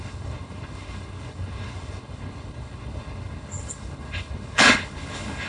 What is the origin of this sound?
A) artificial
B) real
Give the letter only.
A